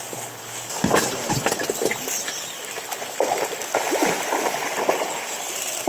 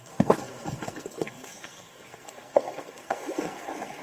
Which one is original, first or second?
first